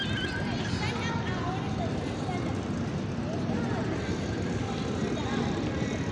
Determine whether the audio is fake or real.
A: real